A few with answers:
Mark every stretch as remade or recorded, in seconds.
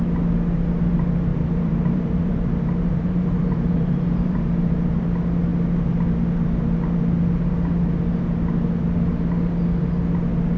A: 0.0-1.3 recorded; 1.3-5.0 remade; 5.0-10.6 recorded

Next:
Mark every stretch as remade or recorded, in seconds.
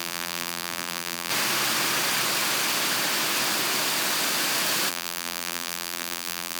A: 0.0-1.3 remade; 1.3-4.9 recorded; 4.9-6.6 remade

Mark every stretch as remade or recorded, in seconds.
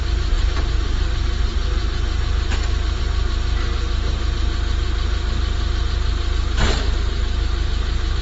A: 0.0-1.5 recorded; 1.5-3.0 remade; 3.0-8.2 recorded